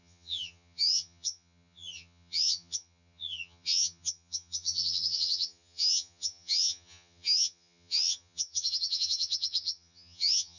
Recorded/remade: remade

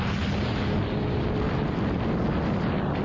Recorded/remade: recorded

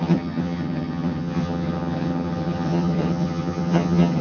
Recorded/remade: remade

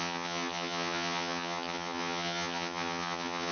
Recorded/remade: remade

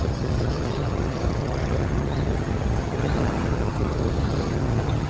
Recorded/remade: remade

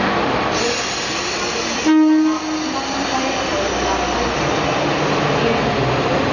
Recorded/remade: recorded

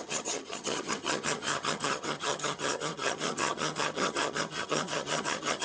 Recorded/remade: remade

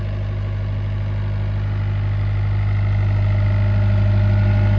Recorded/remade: recorded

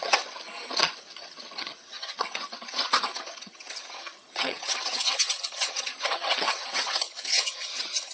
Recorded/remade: remade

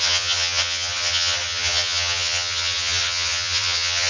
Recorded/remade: remade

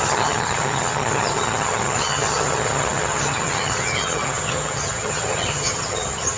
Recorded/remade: remade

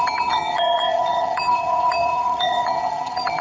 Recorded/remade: remade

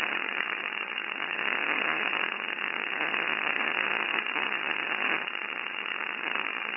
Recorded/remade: remade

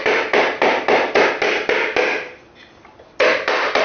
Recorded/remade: recorded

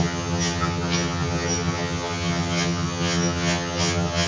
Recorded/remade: remade